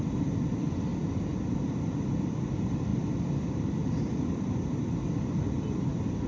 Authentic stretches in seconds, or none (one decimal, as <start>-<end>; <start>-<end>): 0.0-0.9; 2.4-6.3